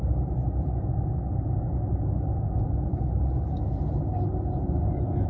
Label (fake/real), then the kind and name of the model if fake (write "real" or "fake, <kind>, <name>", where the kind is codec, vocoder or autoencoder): real